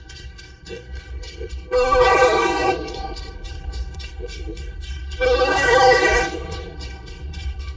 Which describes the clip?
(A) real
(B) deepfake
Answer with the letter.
B